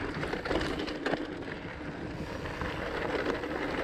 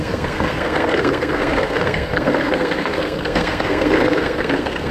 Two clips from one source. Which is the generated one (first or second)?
second